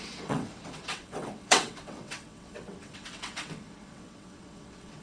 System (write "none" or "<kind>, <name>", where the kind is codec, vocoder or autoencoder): vocoder, WaveNeXt